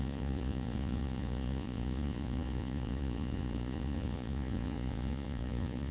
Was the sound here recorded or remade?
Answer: remade